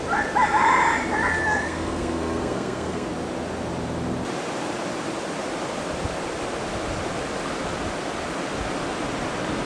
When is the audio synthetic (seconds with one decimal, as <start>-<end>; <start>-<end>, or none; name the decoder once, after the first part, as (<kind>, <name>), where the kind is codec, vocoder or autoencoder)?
1.4-3.1 (codec, SNAC)